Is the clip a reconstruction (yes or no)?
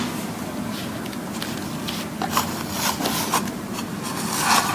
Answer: no